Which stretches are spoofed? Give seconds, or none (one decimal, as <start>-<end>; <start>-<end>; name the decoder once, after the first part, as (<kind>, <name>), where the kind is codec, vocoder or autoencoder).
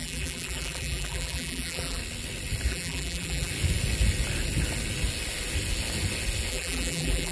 0.0-2.0 (vocoder, BigVGAN v2); 2.7-3.5; 6.5-7.3